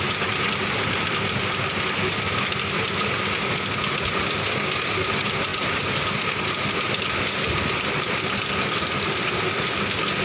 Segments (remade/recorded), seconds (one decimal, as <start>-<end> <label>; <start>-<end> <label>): 0.0-10.2 recorded